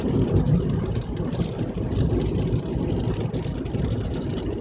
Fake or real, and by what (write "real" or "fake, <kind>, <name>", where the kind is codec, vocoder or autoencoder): real